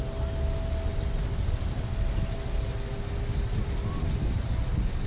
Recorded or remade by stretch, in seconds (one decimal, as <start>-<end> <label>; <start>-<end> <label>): 0.0-5.1 recorded